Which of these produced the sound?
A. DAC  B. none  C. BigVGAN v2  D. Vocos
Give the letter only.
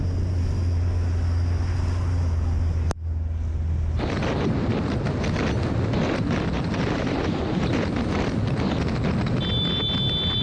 B